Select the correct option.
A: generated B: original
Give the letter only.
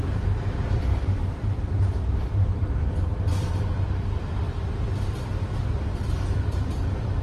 A